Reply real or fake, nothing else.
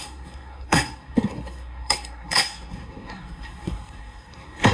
fake